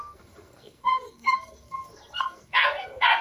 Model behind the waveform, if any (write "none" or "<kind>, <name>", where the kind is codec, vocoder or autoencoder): codec, SNAC